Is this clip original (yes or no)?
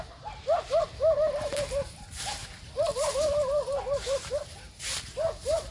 no